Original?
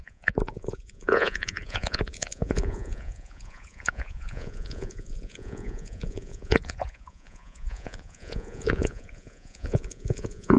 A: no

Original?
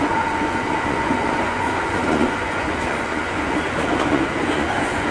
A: no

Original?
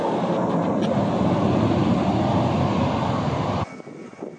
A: yes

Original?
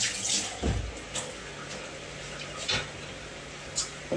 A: yes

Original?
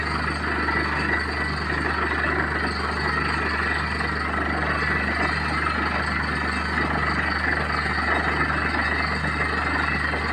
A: yes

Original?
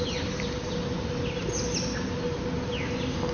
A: yes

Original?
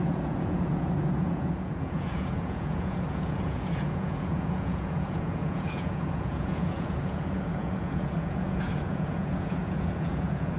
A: no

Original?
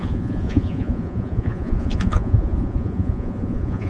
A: no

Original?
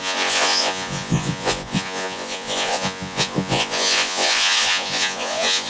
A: no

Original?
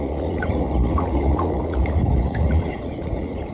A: no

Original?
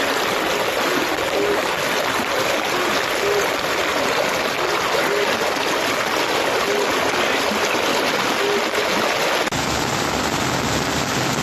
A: yes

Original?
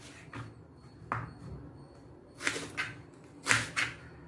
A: yes